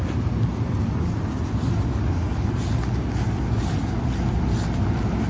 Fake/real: real